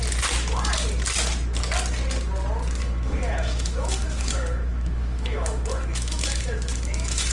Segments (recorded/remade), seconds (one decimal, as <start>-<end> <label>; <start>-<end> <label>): 0.0-2.8 recorded; 2.8-7.3 remade